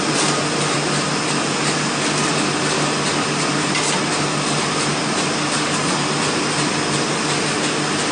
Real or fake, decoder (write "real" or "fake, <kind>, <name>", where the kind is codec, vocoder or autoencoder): real